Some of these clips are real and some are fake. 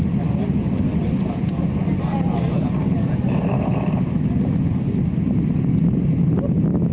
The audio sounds real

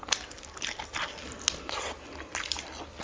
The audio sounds real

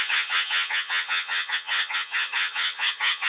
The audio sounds fake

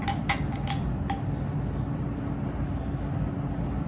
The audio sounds real